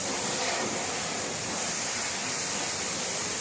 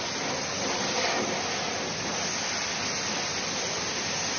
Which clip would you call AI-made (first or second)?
first